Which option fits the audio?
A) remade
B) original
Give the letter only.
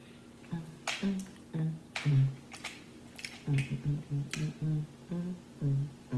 B